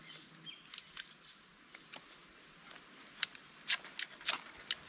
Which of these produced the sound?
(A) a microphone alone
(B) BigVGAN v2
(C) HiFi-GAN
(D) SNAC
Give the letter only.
A